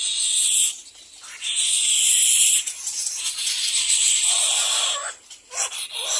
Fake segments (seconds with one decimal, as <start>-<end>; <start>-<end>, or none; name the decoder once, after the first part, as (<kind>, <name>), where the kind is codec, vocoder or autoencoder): none